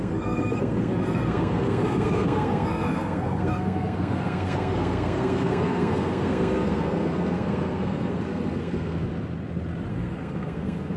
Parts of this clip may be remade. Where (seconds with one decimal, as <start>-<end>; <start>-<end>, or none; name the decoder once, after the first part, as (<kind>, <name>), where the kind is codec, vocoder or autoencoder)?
0.0-9.1 (codec, SNAC); 9.9-11.0